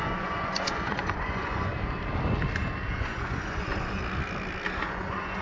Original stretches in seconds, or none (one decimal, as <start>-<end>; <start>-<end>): 1.7-2.9; 4.0-4.9